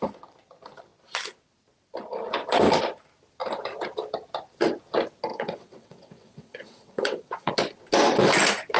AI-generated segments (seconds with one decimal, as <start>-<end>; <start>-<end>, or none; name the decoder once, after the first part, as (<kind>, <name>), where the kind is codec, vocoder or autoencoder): 5.3-7.5 (vocoder, WaveNeXt)